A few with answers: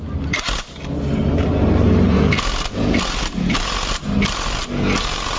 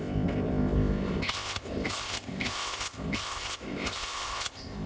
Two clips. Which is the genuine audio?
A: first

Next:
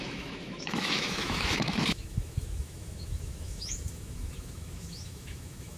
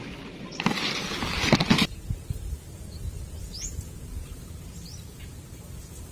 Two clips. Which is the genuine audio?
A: second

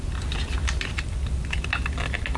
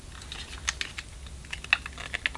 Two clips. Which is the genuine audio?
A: second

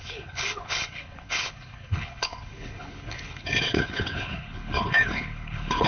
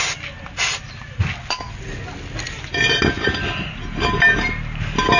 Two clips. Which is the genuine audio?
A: second